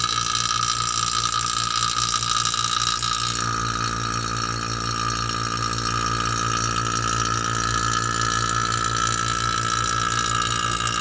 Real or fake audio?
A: real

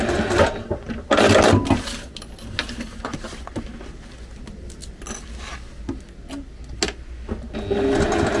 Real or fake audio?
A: real